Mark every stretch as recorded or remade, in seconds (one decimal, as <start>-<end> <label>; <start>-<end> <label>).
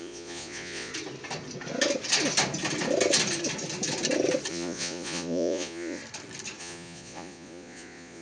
0.0-0.9 remade; 0.9-4.5 recorded; 4.5-6.0 remade; 6.0-6.6 recorded; 6.6-8.2 remade